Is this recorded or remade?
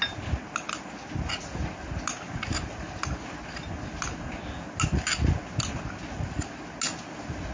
recorded